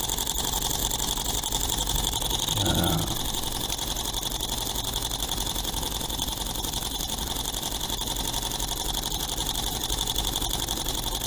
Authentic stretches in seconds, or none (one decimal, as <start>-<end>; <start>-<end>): 0.0-11.3